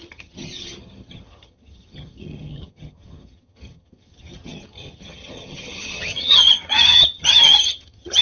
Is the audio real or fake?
fake